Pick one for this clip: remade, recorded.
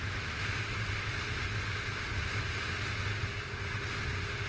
recorded